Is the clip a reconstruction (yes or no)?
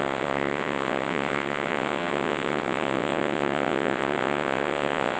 yes